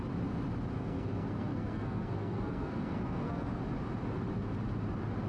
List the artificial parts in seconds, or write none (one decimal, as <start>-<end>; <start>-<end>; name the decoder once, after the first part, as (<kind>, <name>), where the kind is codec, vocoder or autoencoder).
0.7-3.6 (codec, SNAC)